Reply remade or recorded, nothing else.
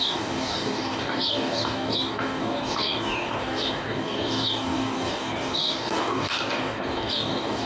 remade